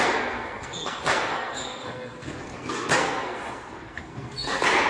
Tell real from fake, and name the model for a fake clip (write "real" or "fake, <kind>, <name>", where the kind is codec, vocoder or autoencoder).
fake, codec, SNAC